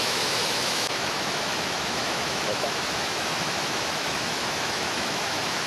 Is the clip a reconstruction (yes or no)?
yes